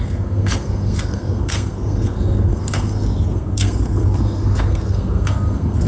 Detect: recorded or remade remade